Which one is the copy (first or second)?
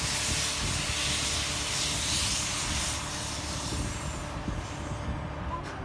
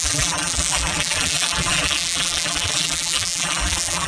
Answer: second